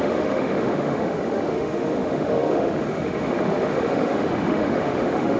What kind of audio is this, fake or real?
fake